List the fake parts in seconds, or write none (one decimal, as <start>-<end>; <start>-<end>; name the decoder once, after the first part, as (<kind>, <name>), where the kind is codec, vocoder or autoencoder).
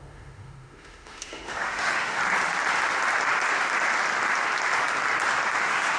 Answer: 0.0-2.2 (autoencoder, DAC-VAE); 5.6-6.0